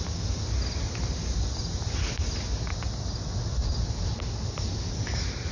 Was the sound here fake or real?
real